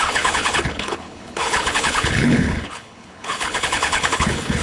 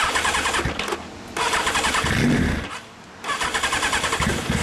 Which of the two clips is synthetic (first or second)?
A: first